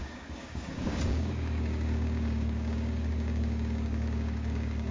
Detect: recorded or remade remade